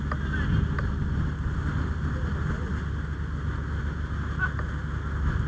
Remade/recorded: recorded